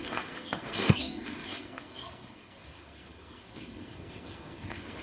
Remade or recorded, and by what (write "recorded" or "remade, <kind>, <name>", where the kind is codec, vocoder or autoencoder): remade, codec, SNAC